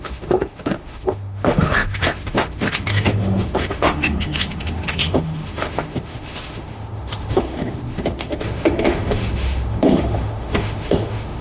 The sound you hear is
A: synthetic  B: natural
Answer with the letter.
A